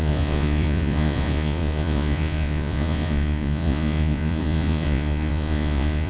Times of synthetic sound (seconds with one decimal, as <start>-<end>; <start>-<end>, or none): 0.0-6.1